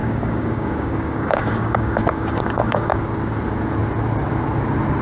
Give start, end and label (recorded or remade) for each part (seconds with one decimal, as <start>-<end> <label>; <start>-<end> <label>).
0.0-3.0 remade; 3.0-5.0 recorded